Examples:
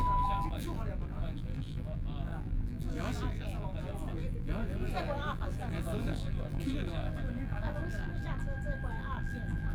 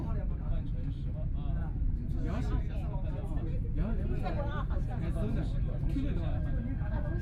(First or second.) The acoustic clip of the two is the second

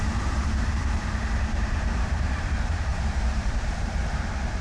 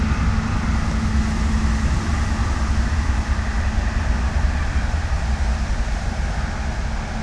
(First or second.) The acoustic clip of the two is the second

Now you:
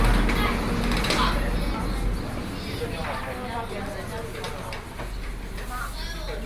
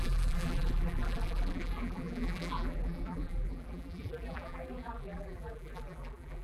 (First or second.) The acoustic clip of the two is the first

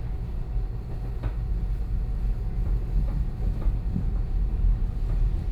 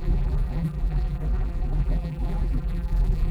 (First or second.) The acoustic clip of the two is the first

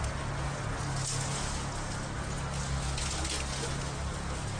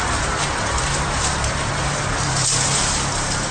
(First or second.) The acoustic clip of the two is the first